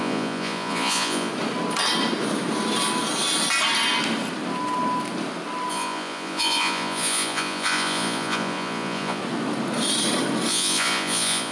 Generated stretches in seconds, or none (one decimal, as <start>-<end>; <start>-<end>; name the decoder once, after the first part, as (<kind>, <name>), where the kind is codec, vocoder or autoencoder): 0.0-1.3 (vocoder, Vocos); 5.7-9.2; 10.5-11.5